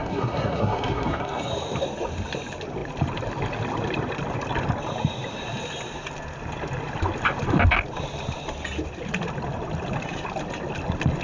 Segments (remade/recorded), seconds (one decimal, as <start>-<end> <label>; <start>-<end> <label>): 0.0-1.5 remade; 1.5-11.2 recorded